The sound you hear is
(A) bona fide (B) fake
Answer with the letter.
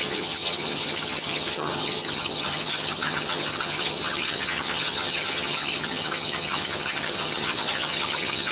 B